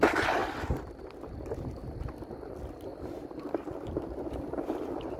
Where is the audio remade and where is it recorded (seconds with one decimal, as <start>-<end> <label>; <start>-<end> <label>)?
0.0-2.9 recorded; 2.9-4.0 remade; 4.0-5.2 recorded